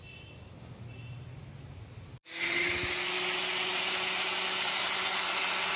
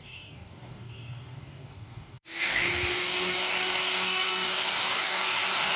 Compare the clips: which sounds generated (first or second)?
second